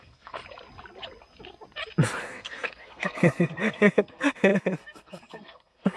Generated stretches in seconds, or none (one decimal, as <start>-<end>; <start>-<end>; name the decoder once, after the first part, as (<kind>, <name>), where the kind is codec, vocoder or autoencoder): 0.0-0.4 (codec, SNAC); 2.2-6.0